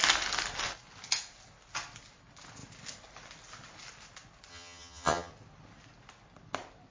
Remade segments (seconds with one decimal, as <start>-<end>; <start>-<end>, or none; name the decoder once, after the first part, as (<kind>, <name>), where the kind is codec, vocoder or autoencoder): 4.5-5.3 (vocoder, HiFi-GAN)